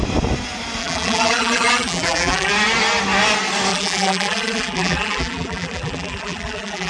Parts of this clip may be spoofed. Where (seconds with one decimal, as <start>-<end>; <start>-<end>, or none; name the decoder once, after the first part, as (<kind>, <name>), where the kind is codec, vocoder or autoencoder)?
0.8-2.5 (vocoder, BigVGAN v2); 3.7-6.9